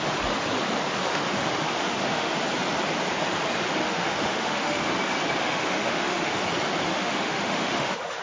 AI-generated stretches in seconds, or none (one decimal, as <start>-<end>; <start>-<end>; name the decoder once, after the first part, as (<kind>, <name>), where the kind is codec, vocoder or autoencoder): 1.0-2.3 (autoencoder, DAC-VAE); 3.8-4.8; 5.4-6.4; 6.9-8.2